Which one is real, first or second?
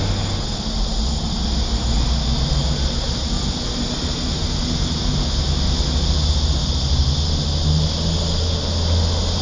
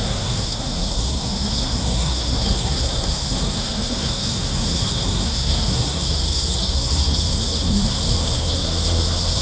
first